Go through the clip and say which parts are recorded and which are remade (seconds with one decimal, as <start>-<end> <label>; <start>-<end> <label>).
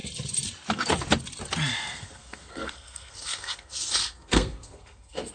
0.0-1.7 recorded; 1.7-5.3 remade